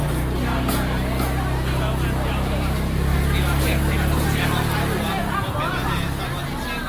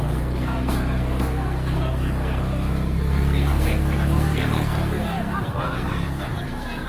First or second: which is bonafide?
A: first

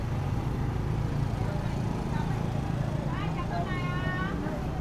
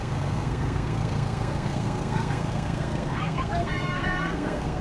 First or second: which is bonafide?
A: first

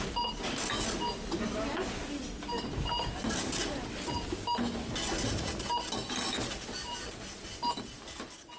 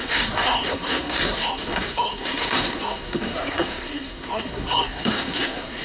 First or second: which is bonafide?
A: first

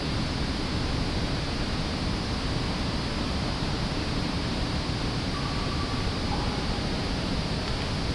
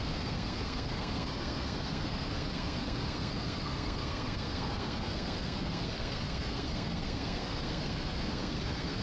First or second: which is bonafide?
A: first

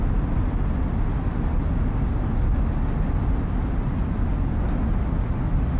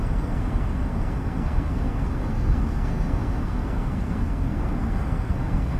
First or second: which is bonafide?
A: first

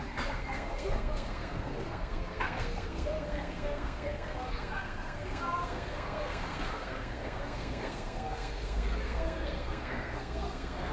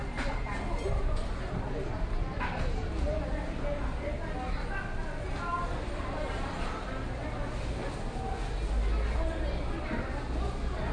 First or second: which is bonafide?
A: second